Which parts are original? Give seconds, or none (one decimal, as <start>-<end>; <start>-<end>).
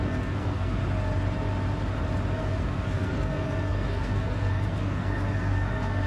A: 0.8-2.4